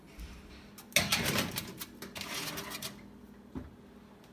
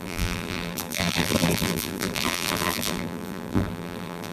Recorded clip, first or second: first